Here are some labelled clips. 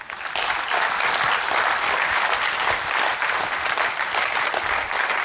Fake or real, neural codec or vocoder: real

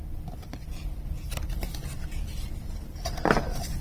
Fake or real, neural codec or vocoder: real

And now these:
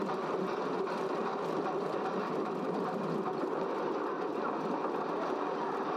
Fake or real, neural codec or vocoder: fake, vocoder, BigVGAN v2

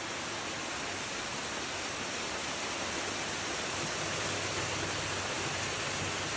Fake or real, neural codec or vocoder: real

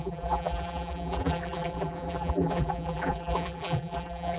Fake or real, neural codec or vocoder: fake, vocoder, BigVGAN v2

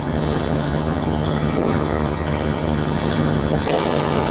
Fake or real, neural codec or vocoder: fake, vocoder, HiFi-GAN